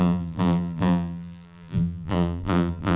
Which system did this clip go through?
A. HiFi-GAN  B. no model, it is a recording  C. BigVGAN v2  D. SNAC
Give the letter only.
C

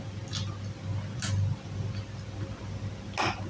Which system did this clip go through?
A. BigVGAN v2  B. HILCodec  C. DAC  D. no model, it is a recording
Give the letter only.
D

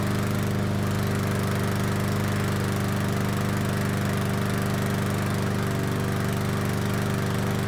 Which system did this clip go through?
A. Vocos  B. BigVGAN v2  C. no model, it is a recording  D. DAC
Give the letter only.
C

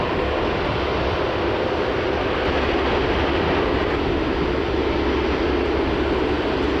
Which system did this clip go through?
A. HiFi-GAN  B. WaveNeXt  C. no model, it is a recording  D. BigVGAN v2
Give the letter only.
C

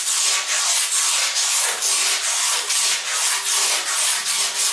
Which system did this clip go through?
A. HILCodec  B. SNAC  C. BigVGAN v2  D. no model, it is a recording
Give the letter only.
D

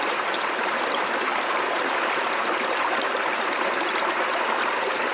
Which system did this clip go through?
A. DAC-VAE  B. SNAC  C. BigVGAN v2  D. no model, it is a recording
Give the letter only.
C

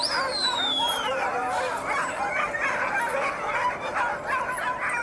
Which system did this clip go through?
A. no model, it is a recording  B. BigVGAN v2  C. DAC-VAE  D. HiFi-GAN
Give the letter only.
B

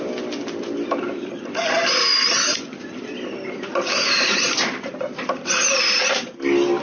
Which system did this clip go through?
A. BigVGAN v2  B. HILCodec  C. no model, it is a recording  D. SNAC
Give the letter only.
A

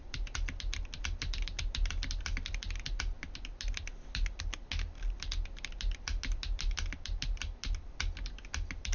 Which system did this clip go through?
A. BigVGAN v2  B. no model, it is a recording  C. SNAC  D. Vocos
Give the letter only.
B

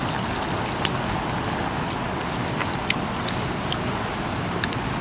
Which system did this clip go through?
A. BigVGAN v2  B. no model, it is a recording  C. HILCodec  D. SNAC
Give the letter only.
B